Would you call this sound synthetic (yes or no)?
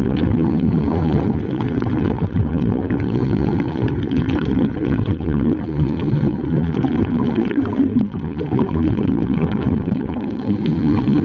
yes